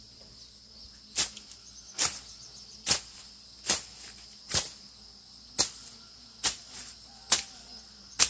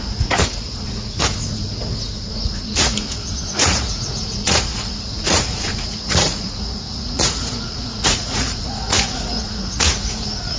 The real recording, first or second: first